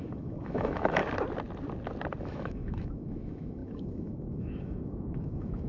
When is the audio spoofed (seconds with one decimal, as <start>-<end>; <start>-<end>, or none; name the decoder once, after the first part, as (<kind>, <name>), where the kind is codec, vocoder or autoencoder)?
0.0-1.0 (autoencoder, DAC-VAE); 2.2-5.7